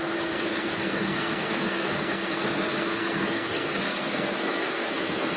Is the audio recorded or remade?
remade